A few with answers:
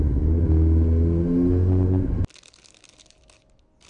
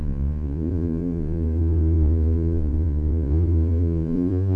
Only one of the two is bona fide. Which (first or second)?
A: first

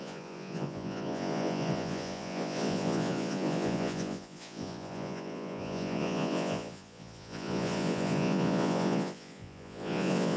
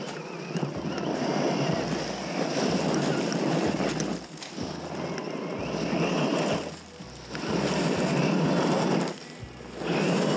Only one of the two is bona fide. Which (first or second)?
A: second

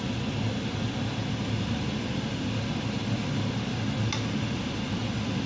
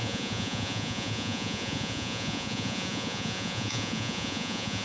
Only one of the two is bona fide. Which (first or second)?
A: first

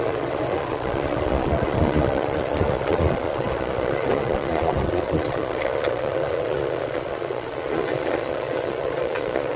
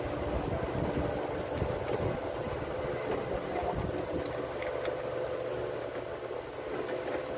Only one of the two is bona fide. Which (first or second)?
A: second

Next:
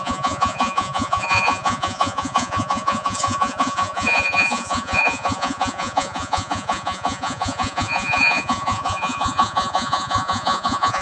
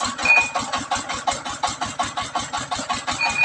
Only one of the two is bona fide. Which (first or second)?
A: second